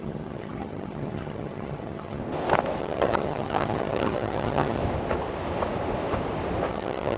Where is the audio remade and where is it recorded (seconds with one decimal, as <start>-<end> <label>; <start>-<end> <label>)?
0.0-2.2 remade; 2.2-2.8 recorded; 2.8-4.8 remade; 4.8-6.7 recorded; 6.7-7.2 remade